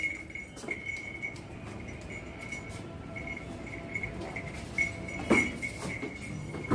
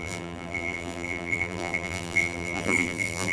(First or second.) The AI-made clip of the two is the second